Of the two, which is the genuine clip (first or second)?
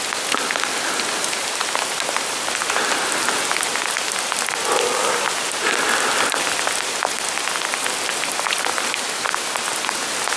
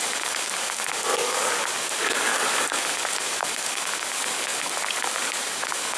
first